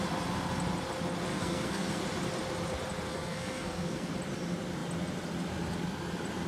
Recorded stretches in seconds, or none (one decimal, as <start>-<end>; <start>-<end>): 0.0-1.3; 2.0-3.1; 4.1-6.5